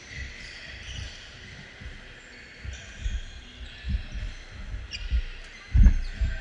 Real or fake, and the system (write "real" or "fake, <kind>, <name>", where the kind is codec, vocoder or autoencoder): real